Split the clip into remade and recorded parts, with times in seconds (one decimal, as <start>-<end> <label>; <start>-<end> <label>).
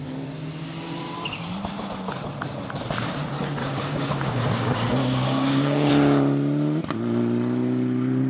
0.0-3.6 recorded; 3.6-5.9 remade; 5.9-8.3 recorded